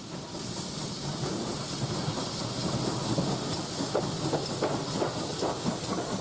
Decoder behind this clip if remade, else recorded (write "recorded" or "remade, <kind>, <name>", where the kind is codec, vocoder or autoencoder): recorded